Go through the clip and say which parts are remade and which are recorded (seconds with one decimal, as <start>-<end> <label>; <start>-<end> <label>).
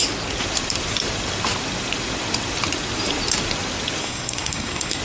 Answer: 0.0-4.0 recorded; 4.0-5.0 remade